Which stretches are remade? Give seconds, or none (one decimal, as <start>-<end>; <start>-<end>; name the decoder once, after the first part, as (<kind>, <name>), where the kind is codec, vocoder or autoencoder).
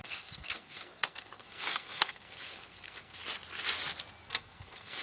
0.0-3.2 (codec, SNAC); 4.3-5.0